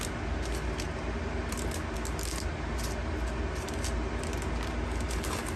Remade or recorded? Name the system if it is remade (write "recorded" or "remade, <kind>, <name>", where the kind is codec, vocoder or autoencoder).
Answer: recorded